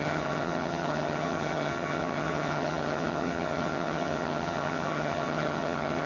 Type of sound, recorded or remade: remade